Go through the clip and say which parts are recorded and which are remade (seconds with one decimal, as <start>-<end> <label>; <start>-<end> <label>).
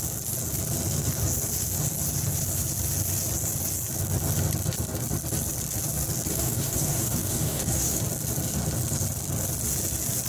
0.0-6.3 recorded; 6.3-8.0 remade; 8.0-10.3 recorded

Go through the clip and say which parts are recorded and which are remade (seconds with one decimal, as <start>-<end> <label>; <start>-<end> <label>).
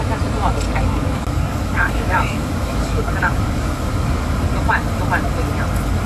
0.0-0.7 recorded; 0.7-4.3 remade; 4.3-6.1 recorded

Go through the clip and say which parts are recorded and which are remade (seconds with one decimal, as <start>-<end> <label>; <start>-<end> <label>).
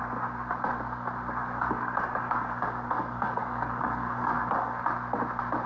0.0-1.4 recorded; 1.4-4.8 remade; 4.8-5.7 recorded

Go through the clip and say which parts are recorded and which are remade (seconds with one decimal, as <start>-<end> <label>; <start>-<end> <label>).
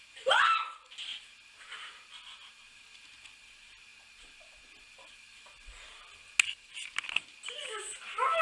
0.0-8.4 recorded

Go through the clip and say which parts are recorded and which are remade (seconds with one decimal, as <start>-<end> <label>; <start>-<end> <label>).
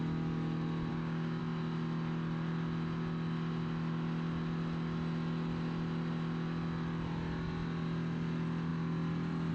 0.0-0.9 recorded; 0.9-1.4 remade; 1.4-9.5 recorded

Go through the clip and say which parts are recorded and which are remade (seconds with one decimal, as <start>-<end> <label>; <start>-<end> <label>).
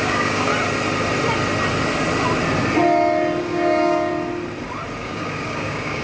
0.0-0.5 remade; 0.5-3.4 recorded; 3.4-4.1 remade; 4.1-5.0 recorded; 5.0-6.0 remade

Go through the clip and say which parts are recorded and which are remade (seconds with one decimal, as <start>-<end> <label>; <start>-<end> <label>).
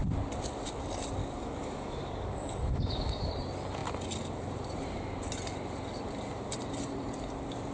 0.0-1.2 recorded; 1.2-3.3 remade; 3.3-7.7 recorded